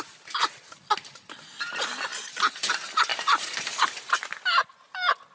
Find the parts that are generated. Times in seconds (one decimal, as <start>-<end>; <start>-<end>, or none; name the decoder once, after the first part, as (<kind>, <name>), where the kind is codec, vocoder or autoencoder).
3.1-3.7 (vocoder, BigVGAN v2)